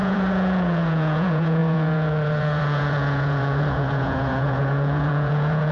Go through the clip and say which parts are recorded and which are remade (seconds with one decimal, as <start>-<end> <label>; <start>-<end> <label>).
0.0-5.7 remade